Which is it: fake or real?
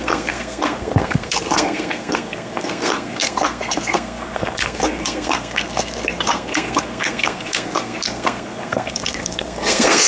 fake